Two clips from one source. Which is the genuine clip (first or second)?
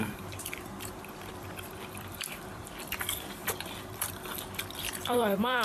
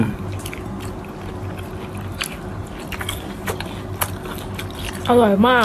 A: second